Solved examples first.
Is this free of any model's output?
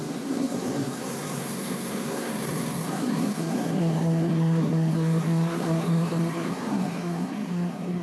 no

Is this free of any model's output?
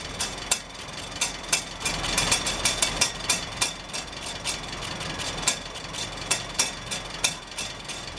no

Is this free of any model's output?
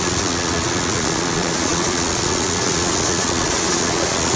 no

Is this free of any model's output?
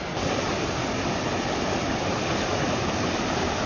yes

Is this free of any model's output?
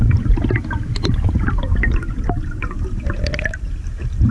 yes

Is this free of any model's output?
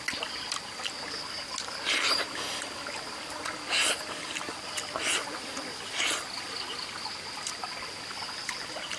yes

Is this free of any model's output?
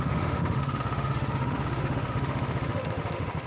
no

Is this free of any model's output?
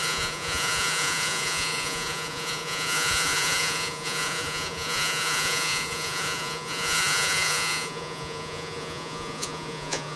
no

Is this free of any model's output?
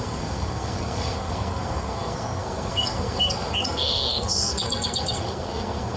no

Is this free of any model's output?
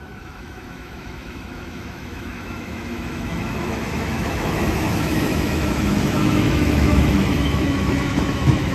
no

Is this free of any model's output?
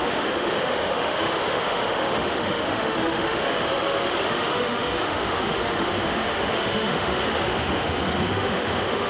no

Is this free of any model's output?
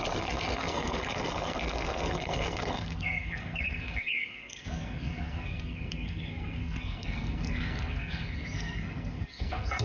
no